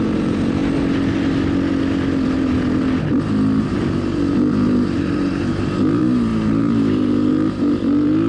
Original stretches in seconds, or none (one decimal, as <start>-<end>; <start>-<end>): 0.6-3.6